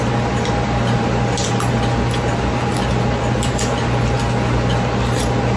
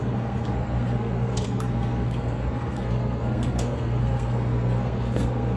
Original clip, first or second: first